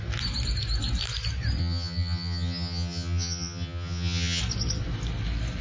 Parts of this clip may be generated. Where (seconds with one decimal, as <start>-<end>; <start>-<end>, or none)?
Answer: 1.6-4.4